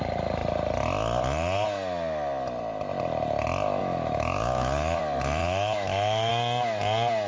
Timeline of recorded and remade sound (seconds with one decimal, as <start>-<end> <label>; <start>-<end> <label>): 0.0-3.8 recorded; 3.8-5.0 remade; 5.0-5.4 recorded; 5.4-6.3 remade; 6.3-7.3 recorded